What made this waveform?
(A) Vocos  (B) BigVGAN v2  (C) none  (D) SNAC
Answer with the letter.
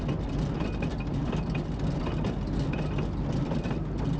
C